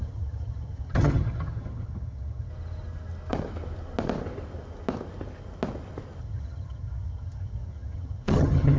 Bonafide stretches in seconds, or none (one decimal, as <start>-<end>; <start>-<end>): 2.5-6.2